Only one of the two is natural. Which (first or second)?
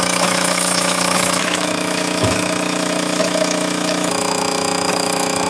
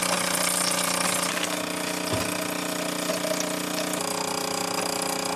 second